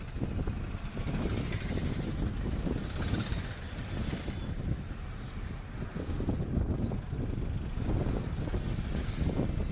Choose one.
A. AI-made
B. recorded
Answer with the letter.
B